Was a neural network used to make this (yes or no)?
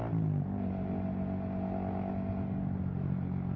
no